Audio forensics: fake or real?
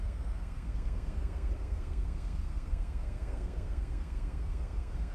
fake